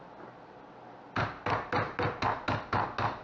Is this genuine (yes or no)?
yes